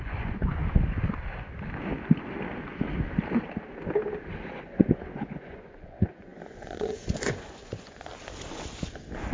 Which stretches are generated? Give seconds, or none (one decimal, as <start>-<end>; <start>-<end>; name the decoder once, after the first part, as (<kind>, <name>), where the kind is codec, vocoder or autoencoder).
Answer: 0.0-0.6 (vocoder, Vocos); 4.6-8.1